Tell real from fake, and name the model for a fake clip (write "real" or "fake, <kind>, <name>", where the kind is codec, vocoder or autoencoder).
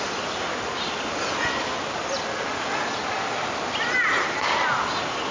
real